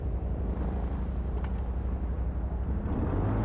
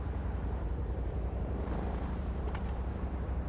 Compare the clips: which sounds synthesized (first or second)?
second